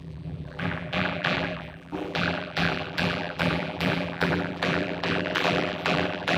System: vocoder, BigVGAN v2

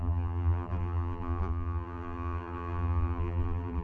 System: vocoder, BigVGAN v2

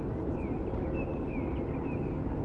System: none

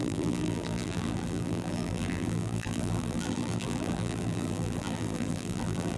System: vocoder, BigVGAN v2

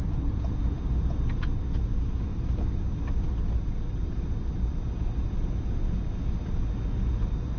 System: none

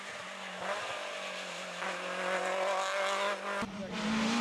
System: none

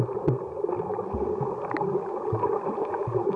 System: none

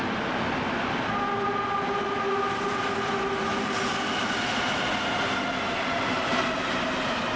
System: none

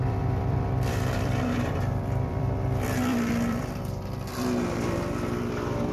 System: vocoder, BigVGAN v2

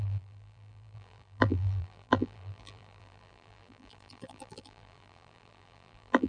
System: vocoder, BigVGAN v2